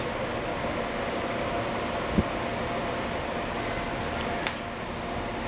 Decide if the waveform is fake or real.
real